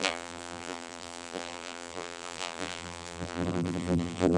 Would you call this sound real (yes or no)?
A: no